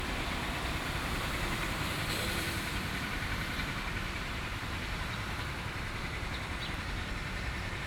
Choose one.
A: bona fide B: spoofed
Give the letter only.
B